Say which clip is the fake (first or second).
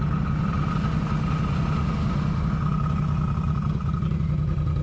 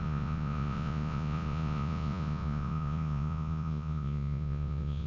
second